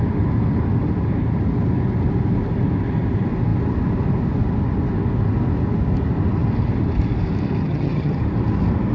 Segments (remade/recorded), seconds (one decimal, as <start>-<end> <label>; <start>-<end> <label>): 0.0-7.6 recorded; 7.6-8.2 remade; 8.2-8.9 recorded